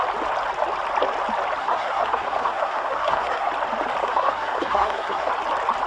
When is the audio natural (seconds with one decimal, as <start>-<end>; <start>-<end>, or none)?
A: 0.0-1.6; 3.5-4.0; 5.3-5.9